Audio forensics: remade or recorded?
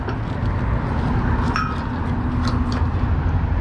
recorded